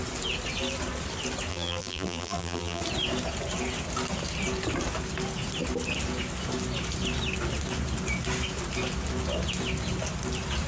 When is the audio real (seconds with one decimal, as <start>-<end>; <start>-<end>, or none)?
0.0-1.5; 2.8-10.7